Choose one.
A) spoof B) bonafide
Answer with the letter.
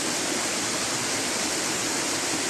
B